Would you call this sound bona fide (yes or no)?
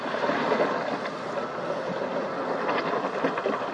yes